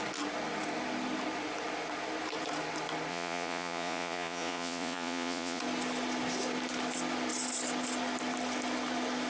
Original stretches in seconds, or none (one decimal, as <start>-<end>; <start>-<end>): 0.0-3.1; 5.6-9.3